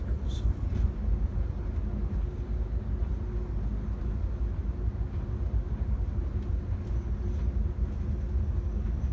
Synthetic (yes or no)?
no